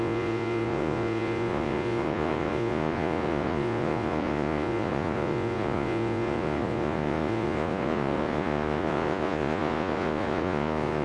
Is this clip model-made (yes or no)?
yes